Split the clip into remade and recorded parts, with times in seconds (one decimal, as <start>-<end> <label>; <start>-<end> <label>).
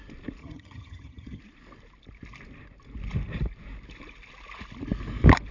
0.0-0.4 recorded; 0.4-1.4 remade; 1.4-5.5 recorded